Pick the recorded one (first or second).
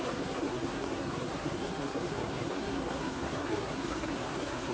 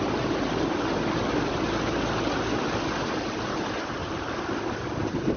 second